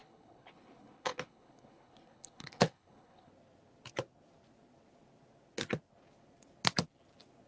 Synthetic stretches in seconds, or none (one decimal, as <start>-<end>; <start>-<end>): 0.0-3.3